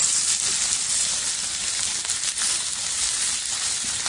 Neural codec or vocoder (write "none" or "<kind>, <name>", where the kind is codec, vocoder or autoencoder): none